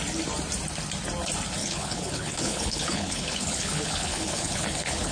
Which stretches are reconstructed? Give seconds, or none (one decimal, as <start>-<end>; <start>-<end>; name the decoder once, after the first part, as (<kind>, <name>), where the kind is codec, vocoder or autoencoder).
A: 1.6-5.1 (codec, HILCodec)